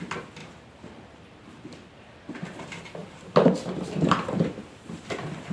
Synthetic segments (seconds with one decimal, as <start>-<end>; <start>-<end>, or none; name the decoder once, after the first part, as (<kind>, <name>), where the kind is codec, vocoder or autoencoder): 0.0-0.4 (vocoder, BigVGAN v2); 1.9-3.0; 4.0-5.5